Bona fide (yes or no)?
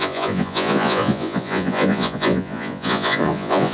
no